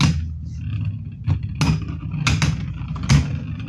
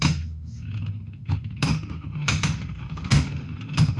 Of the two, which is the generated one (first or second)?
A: second